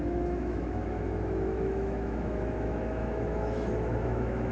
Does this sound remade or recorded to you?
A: remade